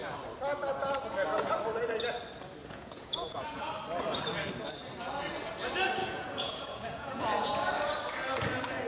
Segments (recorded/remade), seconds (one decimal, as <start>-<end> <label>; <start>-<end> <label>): 0.0-2.6 recorded; 2.6-3.7 remade; 3.7-6.0 recorded; 6.0-7.7 remade; 7.7-8.9 recorded